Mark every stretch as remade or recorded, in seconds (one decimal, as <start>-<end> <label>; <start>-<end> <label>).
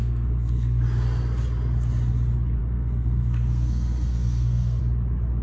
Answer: 0.0-0.8 remade; 0.8-2.6 recorded; 2.6-4.8 remade; 4.8-5.4 recorded